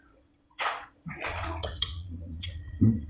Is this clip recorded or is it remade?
remade